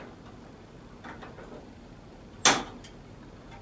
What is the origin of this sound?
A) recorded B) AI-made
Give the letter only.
A